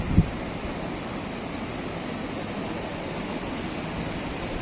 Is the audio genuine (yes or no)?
yes